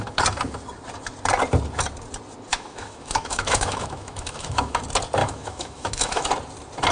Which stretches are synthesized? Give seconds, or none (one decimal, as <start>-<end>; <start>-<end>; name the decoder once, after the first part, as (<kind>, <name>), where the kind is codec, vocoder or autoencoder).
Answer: 2.5-4.8 (autoencoder, DAC-VAE); 5.2-6.3